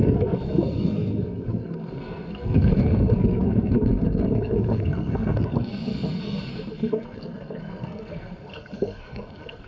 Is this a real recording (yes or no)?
no